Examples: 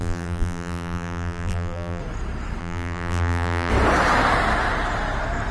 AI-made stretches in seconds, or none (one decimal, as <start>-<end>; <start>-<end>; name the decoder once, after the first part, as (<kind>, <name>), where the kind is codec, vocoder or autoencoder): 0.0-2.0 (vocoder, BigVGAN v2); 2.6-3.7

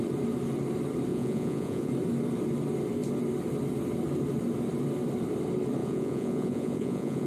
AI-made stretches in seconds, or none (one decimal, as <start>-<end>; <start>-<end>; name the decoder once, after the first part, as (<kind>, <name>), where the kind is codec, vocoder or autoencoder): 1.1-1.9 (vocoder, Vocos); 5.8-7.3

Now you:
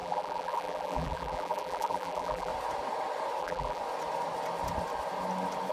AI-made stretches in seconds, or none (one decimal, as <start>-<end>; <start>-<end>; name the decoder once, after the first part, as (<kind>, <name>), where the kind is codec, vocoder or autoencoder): 0.0-2.5 (vocoder, BigVGAN v2); 3.4-3.8

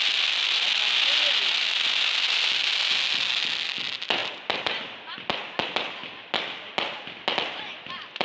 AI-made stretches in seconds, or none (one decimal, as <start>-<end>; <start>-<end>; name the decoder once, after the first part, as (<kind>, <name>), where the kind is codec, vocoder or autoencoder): none